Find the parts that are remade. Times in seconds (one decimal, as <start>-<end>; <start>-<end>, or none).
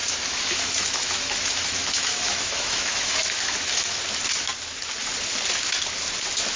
0.0-4.0